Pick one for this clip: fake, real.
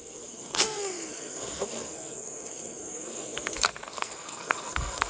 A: fake